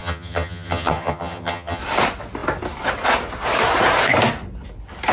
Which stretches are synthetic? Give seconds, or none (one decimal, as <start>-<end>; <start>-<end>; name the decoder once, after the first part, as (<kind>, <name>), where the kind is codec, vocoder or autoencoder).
0.0-1.8 (vocoder, HiFi-GAN)